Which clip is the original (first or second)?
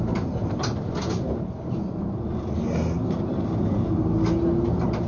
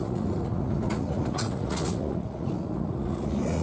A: first